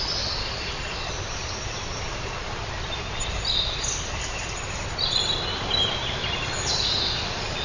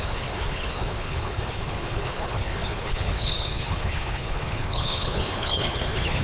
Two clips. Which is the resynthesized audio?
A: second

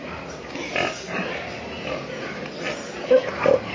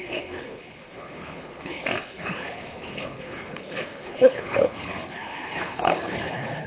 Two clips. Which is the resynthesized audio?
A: second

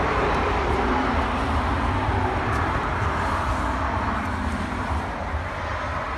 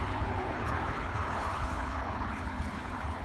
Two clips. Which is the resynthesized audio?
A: second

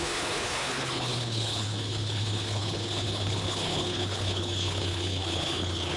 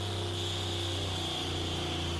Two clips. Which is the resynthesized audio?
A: first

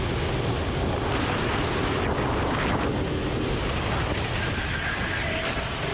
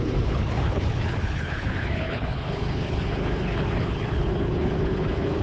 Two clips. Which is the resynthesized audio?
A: second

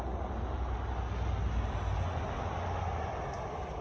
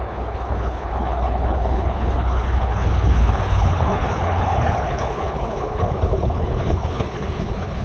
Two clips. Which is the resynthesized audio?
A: second